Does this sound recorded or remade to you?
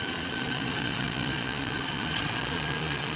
remade